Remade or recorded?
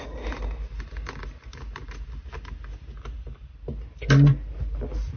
recorded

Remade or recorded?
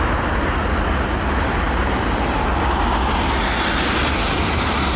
recorded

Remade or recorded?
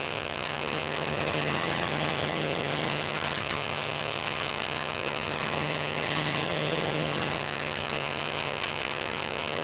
remade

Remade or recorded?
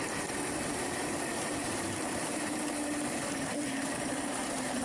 remade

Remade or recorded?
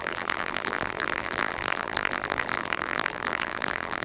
remade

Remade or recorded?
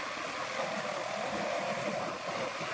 recorded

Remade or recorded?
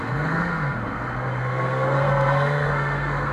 remade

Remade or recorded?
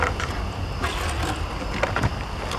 recorded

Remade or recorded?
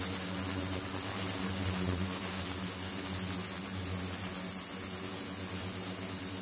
recorded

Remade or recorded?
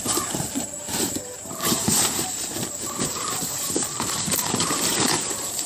remade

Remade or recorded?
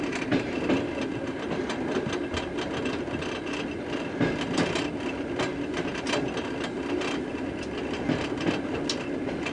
recorded